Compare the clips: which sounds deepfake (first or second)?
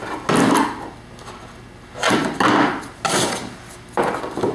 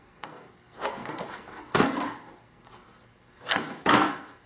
second